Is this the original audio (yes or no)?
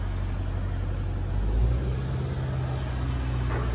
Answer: yes